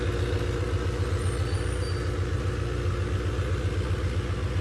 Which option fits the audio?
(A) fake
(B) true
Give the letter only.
B